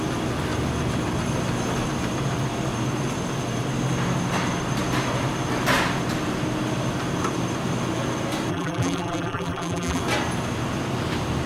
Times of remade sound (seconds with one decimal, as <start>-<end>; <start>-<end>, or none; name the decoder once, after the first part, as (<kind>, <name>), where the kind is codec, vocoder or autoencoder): 8.5-10.0 (vocoder, BigVGAN v2)